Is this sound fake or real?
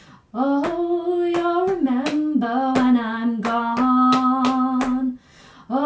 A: real